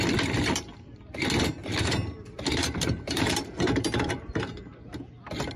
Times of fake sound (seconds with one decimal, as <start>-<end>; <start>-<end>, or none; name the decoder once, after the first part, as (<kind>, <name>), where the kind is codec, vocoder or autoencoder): 1.6-5.0 (vocoder, BigVGAN v2)